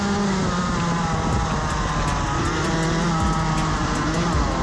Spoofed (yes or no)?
no